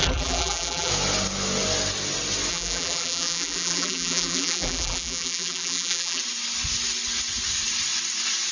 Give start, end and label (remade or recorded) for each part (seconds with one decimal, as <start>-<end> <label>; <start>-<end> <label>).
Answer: 0.0-0.9 remade; 0.9-2.5 recorded; 2.5-6.2 remade; 6.2-8.5 recorded